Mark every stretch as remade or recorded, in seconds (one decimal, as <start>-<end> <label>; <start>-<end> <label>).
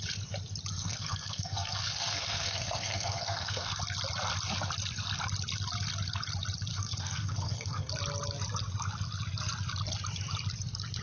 0.0-0.8 recorded; 0.8-3.8 remade; 3.8-6.7 recorded; 6.7-7.9 remade; 7.9-11.0 recorded